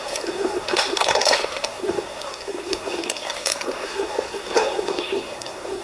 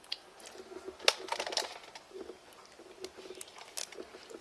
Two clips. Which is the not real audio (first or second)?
first